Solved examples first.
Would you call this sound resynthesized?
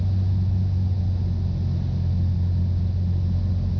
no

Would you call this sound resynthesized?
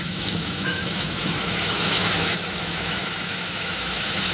yes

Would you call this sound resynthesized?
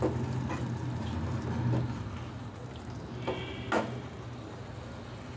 no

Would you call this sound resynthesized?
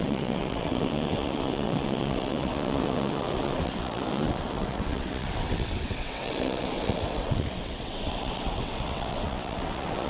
yes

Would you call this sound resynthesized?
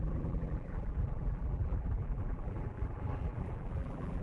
yes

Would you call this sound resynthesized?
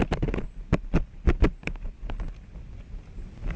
no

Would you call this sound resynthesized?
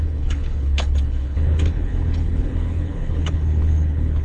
yes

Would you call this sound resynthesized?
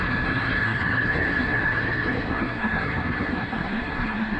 yes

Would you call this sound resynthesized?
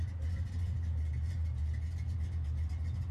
no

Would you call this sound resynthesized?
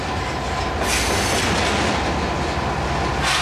no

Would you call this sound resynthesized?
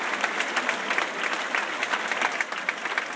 no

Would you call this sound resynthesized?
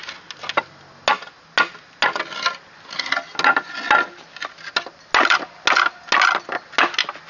no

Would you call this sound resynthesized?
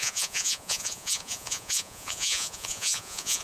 yes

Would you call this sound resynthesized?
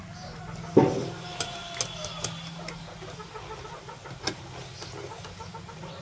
no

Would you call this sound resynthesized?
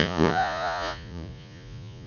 yes